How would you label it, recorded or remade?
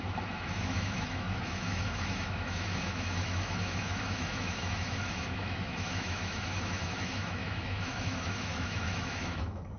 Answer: remade